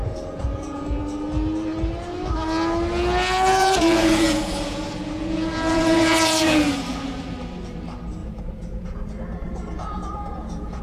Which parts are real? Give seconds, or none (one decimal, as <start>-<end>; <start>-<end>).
1.0-3.6; 7.2-8.2